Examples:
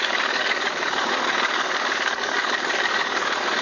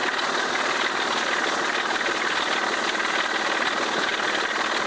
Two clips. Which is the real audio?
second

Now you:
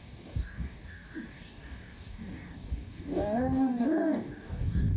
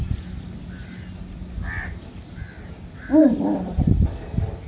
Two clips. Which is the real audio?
second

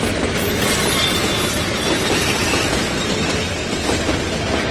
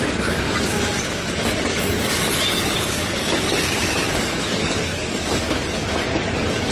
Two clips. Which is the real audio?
first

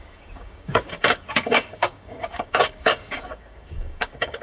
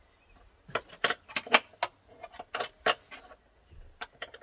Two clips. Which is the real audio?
second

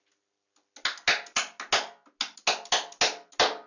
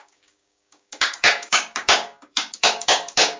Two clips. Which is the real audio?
first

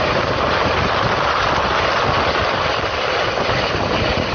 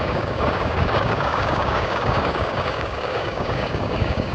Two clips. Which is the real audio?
first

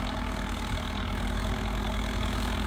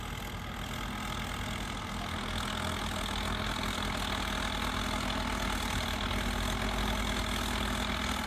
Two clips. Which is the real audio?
second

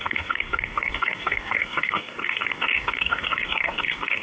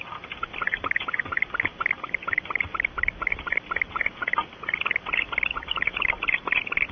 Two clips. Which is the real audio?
second